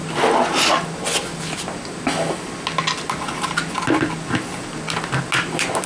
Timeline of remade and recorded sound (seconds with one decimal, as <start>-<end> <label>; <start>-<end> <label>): 0.0-5.9 recorded